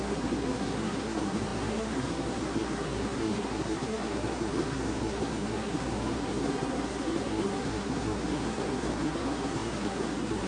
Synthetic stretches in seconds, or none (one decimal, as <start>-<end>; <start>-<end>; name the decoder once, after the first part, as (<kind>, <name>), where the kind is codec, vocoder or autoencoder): 0.0-10.5 (codec, SNAC)